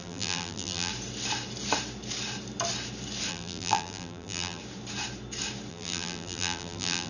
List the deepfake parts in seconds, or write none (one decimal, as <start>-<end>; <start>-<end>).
0.0-0.9; 3.3-4.6; 5.7-7.1